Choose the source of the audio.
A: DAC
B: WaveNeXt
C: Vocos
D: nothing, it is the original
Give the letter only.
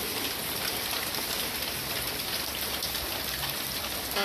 D